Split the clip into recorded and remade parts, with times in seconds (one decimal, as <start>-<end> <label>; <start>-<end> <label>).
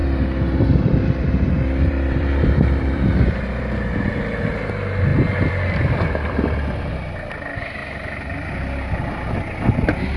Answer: 0.0-4.1 remade; 4.1-5.1 recorded; 5.1-6.9 remade; 6.9-10.2 recorded